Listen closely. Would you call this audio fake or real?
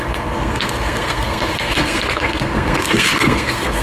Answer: fake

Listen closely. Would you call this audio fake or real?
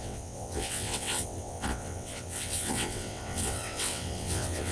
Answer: fake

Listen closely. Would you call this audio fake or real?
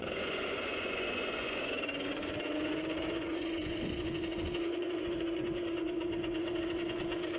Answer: fake